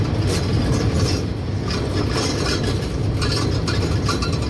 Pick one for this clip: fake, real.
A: real